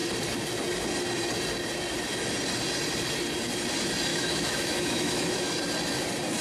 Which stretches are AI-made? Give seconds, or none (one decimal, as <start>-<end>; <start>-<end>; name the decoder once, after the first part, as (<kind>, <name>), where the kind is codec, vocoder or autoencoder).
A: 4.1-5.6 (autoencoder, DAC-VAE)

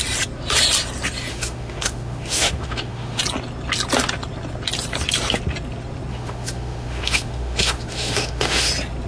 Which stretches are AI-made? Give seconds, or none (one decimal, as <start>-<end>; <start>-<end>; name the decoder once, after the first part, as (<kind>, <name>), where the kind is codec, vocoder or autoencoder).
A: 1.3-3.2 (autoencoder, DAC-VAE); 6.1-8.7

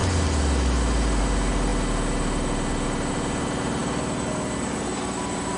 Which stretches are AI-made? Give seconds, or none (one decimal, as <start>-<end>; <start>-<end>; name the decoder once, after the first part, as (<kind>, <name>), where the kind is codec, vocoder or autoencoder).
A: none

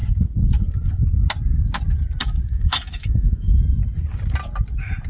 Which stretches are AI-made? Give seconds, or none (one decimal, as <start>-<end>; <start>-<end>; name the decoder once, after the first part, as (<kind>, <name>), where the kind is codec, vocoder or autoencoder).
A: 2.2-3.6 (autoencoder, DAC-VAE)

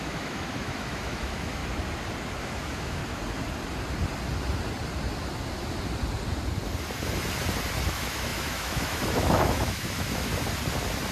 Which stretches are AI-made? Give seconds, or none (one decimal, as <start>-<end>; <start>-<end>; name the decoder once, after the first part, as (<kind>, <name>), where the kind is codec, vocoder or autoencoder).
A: 0.0-1.6 (autoencoder, DAC-VAE); 2.4-3.0; 7.9-10.3

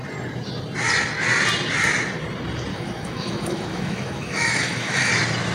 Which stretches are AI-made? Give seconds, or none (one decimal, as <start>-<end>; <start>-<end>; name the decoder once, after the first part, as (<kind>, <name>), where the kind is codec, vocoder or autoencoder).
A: 2.7-5.1 (autoencoder, DAC-VAE)